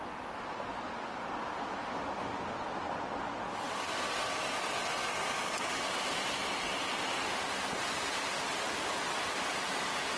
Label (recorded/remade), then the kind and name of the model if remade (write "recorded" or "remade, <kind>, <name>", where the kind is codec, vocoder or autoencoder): recorded